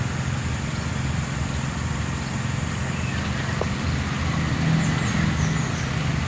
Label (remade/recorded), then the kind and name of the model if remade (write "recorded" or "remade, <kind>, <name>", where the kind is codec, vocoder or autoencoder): recorded